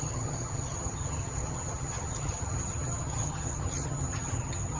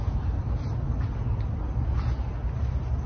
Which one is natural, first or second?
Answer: second